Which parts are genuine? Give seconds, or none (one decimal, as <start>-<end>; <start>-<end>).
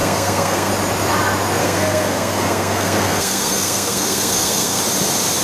0.7-1.6; 4.8-5.4